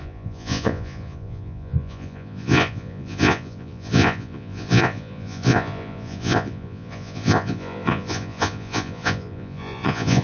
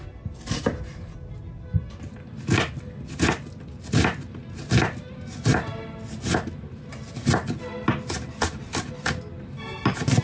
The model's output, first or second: first